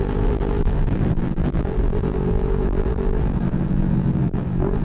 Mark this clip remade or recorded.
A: remade